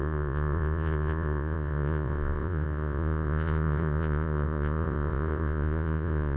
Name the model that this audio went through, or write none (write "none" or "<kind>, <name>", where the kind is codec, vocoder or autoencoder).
vocoder, Vocos